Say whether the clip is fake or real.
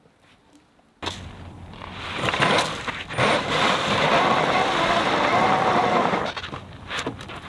real